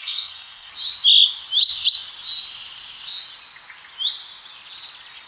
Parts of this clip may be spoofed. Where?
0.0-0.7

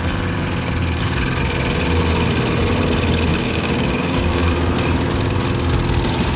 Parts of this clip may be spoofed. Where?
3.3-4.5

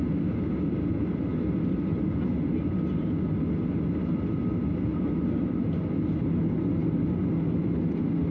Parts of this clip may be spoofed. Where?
none

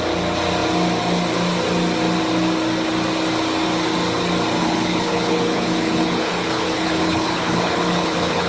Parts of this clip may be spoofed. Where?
4.6-8.5